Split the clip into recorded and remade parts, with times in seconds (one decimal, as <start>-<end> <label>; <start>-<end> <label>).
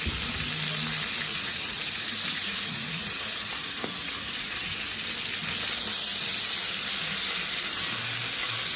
0.0-1.3 recorded; 1.3-5.0 remade; 5.0-8.8 recorded